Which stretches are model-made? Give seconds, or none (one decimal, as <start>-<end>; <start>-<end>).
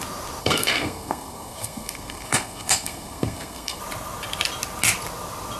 0.4-3.8